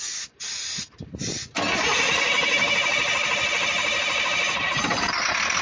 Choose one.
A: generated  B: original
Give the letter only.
B